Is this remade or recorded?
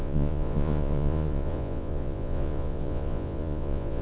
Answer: remade